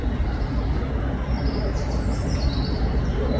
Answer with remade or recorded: recorded